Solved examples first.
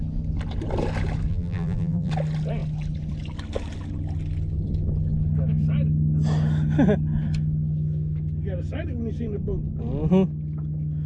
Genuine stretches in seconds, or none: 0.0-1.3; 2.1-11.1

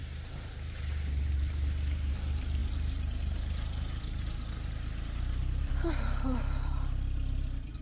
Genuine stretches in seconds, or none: 2.1-2.6; 5.7-7.8